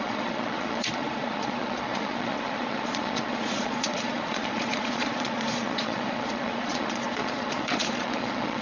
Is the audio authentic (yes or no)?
no